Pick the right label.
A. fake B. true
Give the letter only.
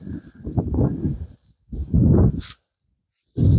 B